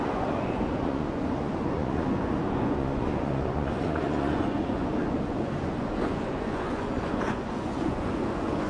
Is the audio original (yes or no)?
no